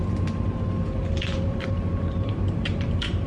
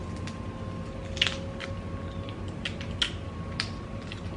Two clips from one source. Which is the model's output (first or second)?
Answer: first